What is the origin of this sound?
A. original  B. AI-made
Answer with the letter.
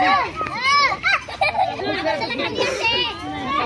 A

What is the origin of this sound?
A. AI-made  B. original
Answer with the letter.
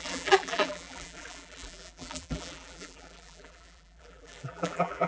A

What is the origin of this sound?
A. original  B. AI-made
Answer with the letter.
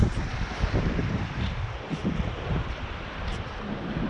B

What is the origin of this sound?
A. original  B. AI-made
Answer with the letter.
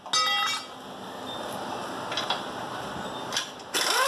A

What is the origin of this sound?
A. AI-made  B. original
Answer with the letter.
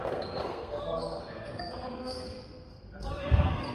A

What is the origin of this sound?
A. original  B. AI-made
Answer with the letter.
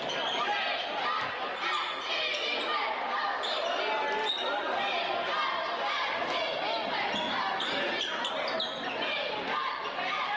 A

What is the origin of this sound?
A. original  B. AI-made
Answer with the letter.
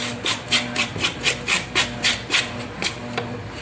B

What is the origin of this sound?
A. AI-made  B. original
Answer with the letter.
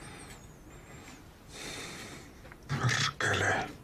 B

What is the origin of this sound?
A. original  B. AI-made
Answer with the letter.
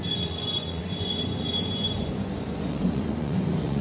B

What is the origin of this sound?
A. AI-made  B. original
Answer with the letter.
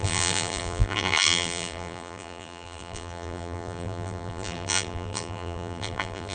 A